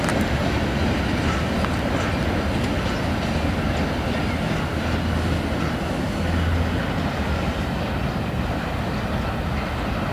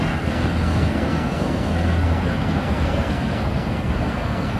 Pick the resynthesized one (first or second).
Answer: second